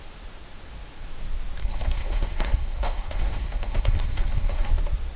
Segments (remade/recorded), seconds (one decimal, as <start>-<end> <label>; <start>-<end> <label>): 0.0-1.6 recorded; 1.6-4.7 remade; 4.7-5.2 recorded